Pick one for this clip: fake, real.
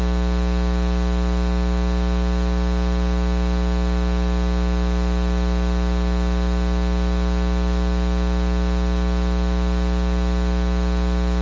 real